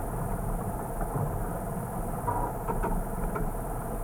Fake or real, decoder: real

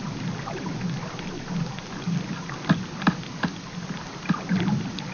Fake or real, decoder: real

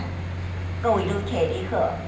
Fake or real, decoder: real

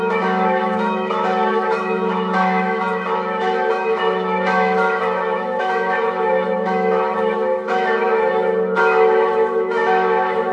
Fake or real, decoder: fake, autoencoder, DAC-VAE